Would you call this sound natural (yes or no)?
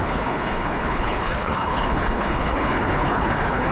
no